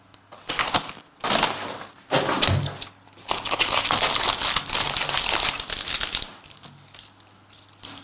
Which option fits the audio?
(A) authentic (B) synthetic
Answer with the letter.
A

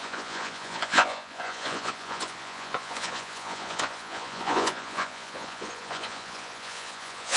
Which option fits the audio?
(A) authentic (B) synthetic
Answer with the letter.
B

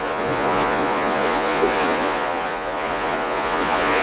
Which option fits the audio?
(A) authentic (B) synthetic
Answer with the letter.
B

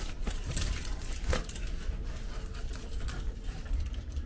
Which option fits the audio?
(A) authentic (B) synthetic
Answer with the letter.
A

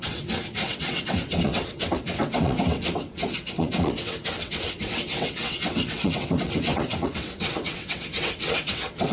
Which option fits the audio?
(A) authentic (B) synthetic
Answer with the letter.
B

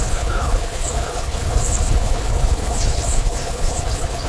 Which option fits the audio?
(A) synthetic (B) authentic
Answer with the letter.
A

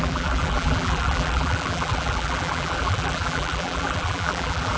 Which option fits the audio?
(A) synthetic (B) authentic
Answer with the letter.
A